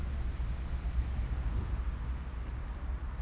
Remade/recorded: recorded